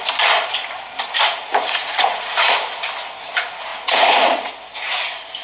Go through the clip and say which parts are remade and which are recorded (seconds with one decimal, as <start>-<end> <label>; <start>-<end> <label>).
0.0-1.5 recorded; 1.5-2.6 remade; 2.6-3.7 recorded; 3.7-4.5 remade; 4.5-5.4 recorded